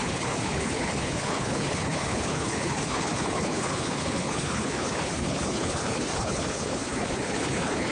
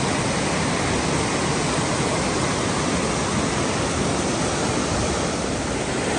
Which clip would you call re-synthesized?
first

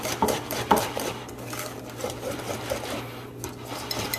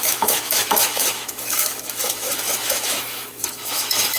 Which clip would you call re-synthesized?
second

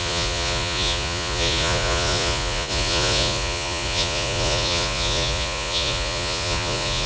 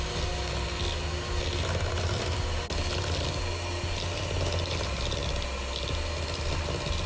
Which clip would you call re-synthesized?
first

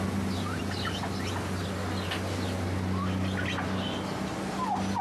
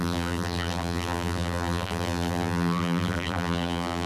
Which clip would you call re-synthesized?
second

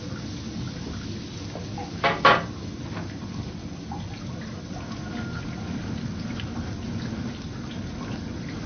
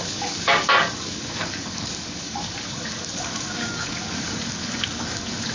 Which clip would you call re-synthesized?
second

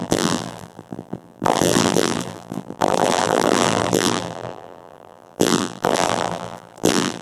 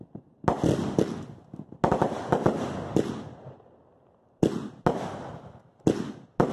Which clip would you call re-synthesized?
first